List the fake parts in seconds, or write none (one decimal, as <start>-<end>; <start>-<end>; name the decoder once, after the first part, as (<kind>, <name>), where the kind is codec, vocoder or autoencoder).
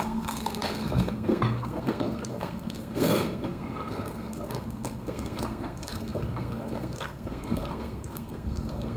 0.0-9.0 (codec, SNAC)